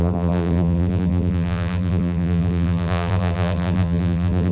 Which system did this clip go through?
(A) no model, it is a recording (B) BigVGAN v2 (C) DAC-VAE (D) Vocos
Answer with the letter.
B